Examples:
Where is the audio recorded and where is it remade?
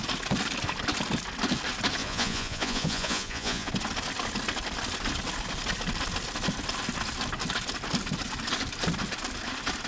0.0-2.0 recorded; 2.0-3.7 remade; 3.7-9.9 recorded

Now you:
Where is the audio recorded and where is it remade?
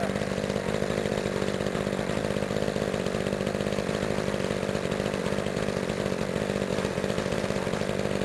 0.0-6.7 recorded; 6.7-7.7 remade; 7.7-8.2 recorded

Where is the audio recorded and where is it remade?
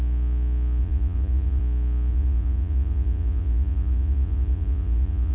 0.0-0.8 recorded; 0.8-1.6 remade; 1.6-2.1 recorded; 2.1-5.3 remade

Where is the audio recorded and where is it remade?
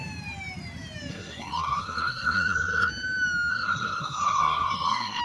0.0-1.1 recorded; 1.1-2.9 remade; 2.9-3.5 recorded; 3.5-5.2 remade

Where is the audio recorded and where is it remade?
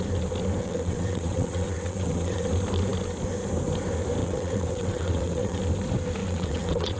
0.0-0.6 recorded; 0.6-2.5 remade; 2.5-4.2 recorded; 4.2-5.6 remade; 5.6-6.2 recorded; 6.2-7.0 remade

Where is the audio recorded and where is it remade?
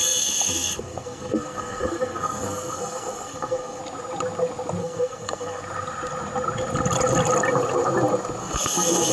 0.0-3.8 remade; 3.8-4.8 recorded; 4.8-5.6 remade; 5.6-8.4 recorded; 8.4-9.1 remade